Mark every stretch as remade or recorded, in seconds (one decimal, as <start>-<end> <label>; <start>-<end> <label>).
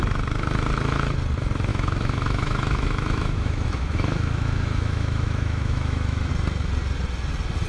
0.0-1.7 recorded; 1.7-6.3 remade; 6.3-7.7 recorded